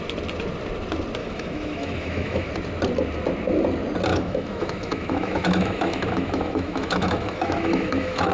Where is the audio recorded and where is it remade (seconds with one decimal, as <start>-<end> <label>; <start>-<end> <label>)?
0.0-1.2 recorded; 1.2-2.5 remade; 2.5-4.1 recorded; 4.1-8.3 remade